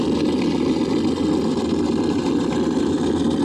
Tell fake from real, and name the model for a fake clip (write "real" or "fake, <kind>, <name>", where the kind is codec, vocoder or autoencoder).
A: real